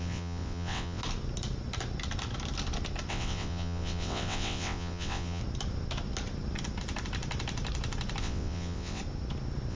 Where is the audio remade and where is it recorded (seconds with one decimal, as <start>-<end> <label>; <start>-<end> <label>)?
0.0-1.0 remade; 1.0-3.1 recorded; 3.1-5.4 remade; 5.4-8.2 recorded; 8.2-9.0 remade; 9.0-9.7 recorded